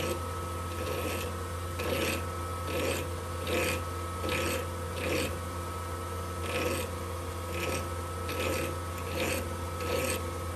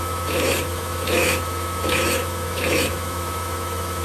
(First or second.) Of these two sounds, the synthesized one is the second